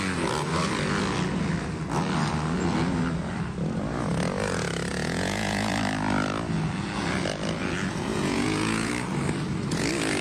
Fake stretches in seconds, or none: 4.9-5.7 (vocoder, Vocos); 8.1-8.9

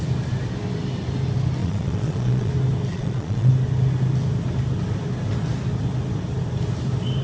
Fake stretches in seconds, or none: 1.6-2.5 (vocoder, Vocos); 2.9-3.5

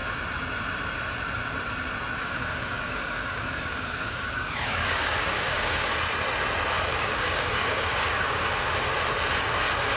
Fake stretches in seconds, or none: 2.2-5.9 (codec, DAC); 6.9-8.5

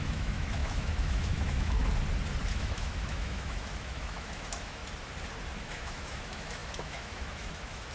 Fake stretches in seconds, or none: 0.0-1.8 (autoencoder, DAC-VAE); 2.5-4.8; 5.6-7.9

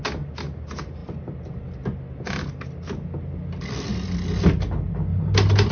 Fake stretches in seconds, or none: none